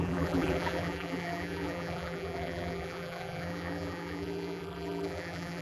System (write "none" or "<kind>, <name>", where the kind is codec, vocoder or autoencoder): vocoder, BigVGAN v2